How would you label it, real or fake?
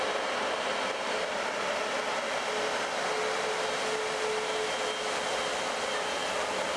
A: real